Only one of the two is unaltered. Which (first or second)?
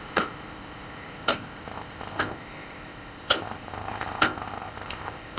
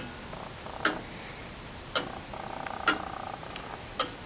second